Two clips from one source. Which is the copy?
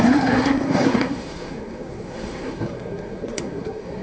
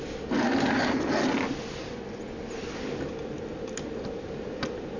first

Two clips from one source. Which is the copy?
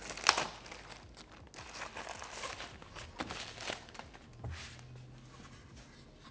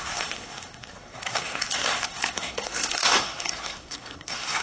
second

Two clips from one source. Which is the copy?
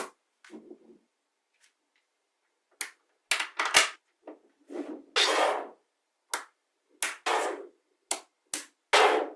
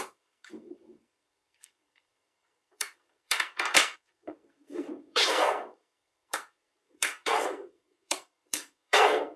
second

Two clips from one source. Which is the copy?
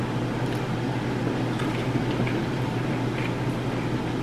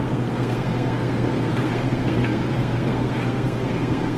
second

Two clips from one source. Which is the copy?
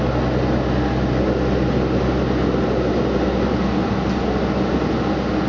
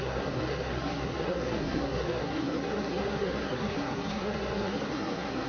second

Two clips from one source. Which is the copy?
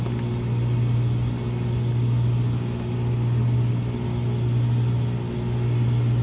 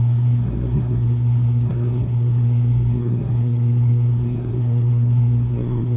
second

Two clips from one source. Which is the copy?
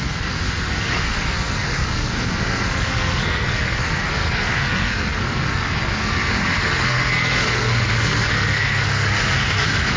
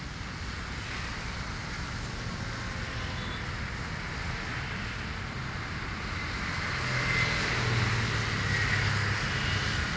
first